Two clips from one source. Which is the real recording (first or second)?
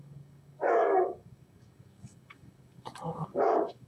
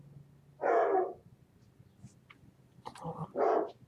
second